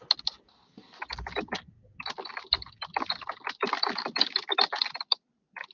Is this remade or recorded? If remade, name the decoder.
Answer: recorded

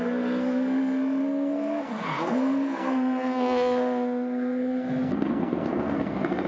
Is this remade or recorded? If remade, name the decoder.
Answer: remade, codec, SNAC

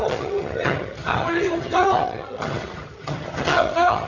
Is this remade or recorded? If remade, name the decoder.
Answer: remade, vocoder, HiFi-GAN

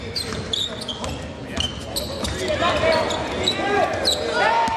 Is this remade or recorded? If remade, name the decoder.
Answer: recorded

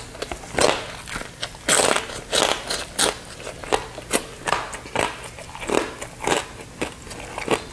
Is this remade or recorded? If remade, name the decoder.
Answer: recorded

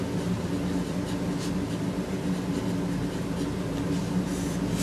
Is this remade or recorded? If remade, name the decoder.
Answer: recorded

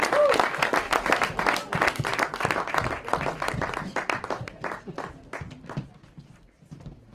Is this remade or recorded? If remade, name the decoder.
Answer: recorded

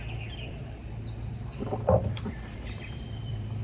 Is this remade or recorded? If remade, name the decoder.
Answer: remade, vocoder, BigVGAN v2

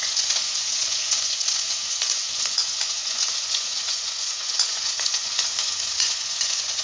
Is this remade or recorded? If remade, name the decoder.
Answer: remade, vocoder, Vocos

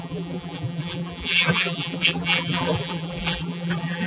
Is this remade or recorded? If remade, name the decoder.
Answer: remade, vocoder, BigVGAN v2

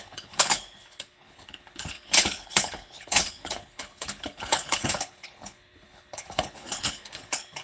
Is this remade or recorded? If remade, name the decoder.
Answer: remade, codec, HILCodec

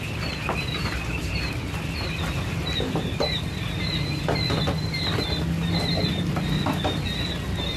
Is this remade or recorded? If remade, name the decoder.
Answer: recorded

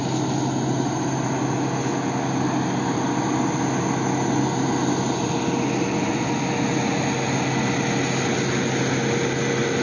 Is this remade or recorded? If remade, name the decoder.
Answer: recorded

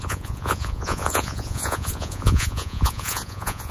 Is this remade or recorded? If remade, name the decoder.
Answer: remade, vocoder, Vocos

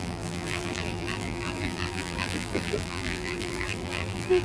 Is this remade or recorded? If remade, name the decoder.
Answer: remade, vocoder, BigVGAN v2